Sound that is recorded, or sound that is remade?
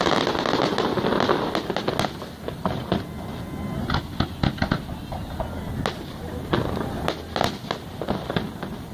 recorded